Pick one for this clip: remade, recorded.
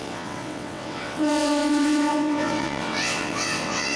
remade